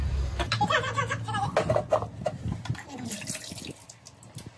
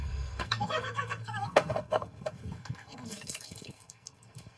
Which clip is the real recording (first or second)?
first